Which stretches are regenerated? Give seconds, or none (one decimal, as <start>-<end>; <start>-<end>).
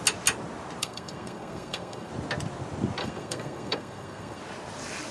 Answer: 0.8-2.1; 3.0-4.4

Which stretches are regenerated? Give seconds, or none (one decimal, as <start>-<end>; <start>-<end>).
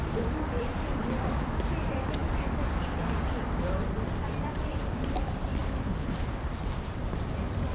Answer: 0.0-0.7; 1.3-2.2; 3.6-5.6; 6.6-7.7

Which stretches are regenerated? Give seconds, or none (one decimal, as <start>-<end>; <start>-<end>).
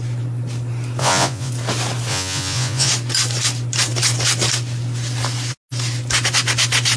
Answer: 1.0-1.5; 2.1-2.9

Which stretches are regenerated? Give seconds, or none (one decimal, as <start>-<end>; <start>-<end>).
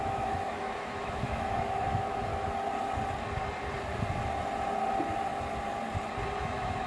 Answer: 0.0-2.3; 6.4-6.9